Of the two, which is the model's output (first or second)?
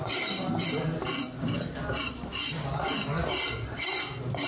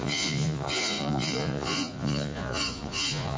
second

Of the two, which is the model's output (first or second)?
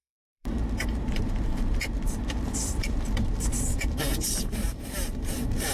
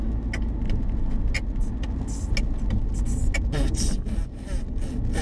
first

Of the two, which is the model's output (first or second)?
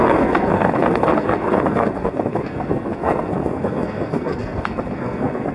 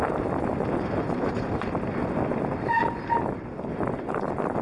first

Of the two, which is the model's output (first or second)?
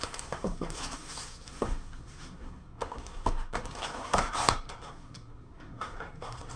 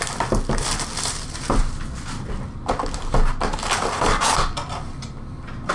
first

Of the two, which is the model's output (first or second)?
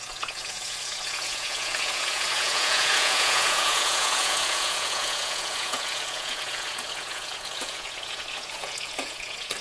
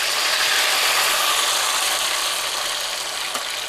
first